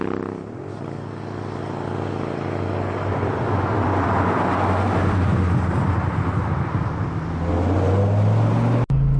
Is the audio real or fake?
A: real